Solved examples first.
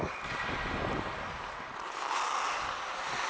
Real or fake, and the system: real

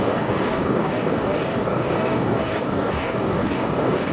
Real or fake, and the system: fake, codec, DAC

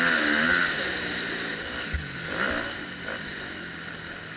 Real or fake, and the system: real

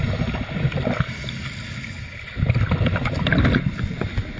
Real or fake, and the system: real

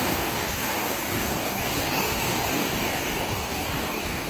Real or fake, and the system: fake, codec, DAC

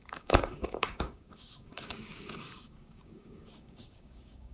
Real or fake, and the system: fake, codec, DAC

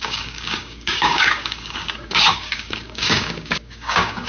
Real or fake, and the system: fake, codec, DAC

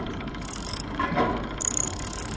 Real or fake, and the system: fake, codec, DAC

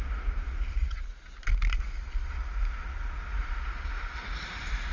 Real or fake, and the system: real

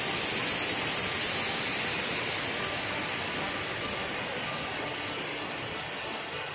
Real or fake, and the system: real